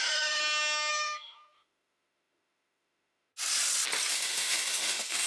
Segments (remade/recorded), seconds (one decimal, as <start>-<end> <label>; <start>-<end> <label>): 0.0-0.4 remade; 0.4-0.9 recorded; 0.9-3.3 remade; 3.3-4.1 recorded; 4.1-5.3 remade